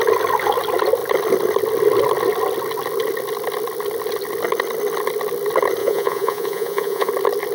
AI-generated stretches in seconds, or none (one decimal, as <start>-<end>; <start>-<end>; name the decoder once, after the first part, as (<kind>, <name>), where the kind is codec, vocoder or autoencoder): 5.8-7.1 (vocoder, Vocos)